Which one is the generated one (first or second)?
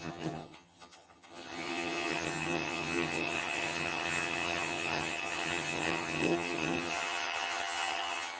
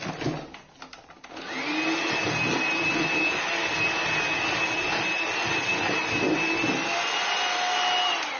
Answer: first